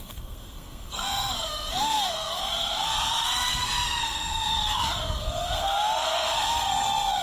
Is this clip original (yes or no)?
no